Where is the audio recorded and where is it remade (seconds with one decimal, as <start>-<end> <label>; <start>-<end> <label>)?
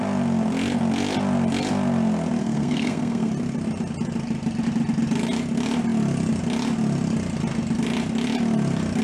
0.0-2.4 recorded; 2.4-3.3 remade; 3.3-9.0 recorded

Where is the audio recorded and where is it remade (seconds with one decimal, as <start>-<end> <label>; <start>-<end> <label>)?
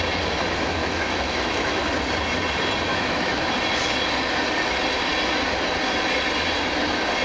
0.0-0.8 recorded; 0.8-1.8 remade; 1.8-2.9 recorded; 2.9-3.5 remade; 3.5-7.2 recorded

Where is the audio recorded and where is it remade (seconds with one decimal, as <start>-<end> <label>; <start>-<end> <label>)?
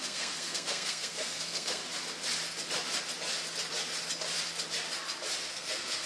0.0-1.8 remade; 1.8-5.5 recorded; 5.5-6.1 remade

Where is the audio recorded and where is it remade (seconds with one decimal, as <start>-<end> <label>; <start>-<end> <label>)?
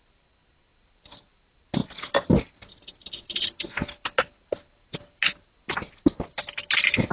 0.0-7.1 recorded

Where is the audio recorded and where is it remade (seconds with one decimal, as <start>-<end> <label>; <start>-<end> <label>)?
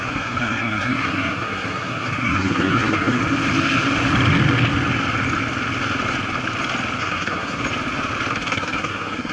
0.0-3.2 remade; 3.2-7.0 recorded; 7.0-7.6 remade; 7.6-8.3 recorded; 8.3-9.3 remade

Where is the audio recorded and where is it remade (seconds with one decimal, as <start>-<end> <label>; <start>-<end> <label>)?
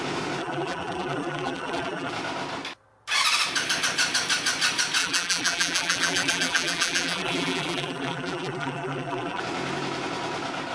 0.0-0.4 recorded; 0.4-2.1 remade; 2.1-5.0 recorded; 5.0-9.4 remade; 9.4-10.7 recorded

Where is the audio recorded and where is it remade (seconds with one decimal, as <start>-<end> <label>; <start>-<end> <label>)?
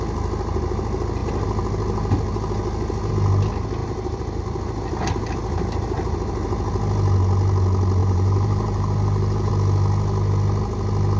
0.0-3.8 recorded; 3.8-4.4 remade; 4.4-8.0 recorded; 8.0-9.5 remade; 9.5-11.2 recorded